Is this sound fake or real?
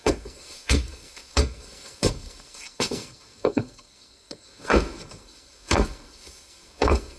fake